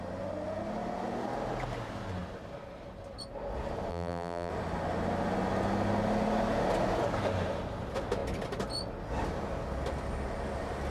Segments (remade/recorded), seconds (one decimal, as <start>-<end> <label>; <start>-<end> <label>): 0.0-3.9 recorded; 3.9-4.5 remade; 4.5-10.9 recorded